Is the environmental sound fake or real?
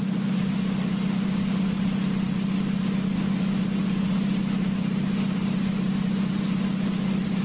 real